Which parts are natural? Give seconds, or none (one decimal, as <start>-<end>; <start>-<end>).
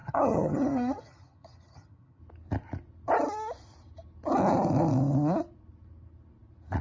2.2-6.8